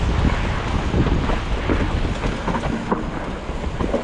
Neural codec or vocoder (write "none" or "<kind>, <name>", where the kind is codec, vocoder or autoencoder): none